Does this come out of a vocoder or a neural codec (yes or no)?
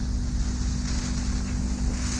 no